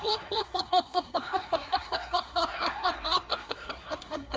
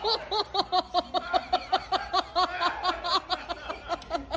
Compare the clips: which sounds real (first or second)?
second